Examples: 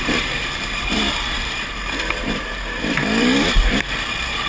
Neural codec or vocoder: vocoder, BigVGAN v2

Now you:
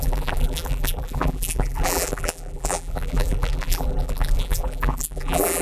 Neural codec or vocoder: vocoder, BigVGAN v2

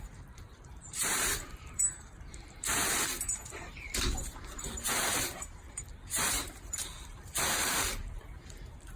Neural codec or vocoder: vocoder, BigVGAN v2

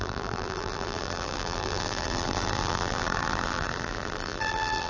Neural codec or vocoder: vocoder, BigVGAN v2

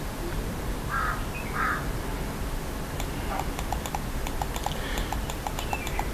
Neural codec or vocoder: vocoder, BigVGAN v2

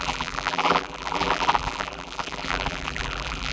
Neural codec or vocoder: vocoder, BigVGAN v2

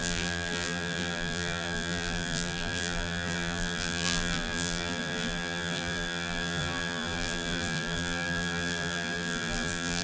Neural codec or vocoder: vocoder, BigVGAN v2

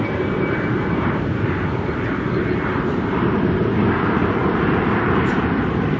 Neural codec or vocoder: vocoder, BigVGAN v2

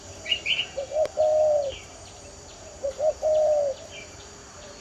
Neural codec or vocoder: vocoder, BigVGAN v2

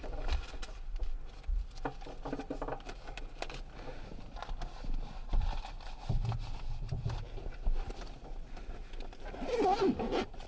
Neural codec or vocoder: none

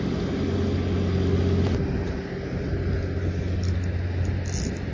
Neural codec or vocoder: none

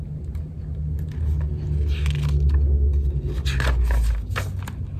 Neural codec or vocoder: none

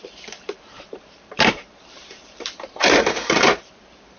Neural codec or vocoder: vocoder, BigVGAN v2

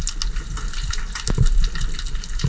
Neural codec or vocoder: none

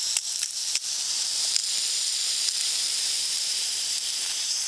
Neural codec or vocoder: vocoder, BigVGAN v2